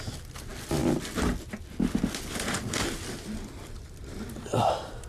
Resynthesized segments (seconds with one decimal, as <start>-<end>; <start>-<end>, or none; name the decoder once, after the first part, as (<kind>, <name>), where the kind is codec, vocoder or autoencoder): 0.0-0.5 (vocoder, BigVGAN v2); 3.6-5.1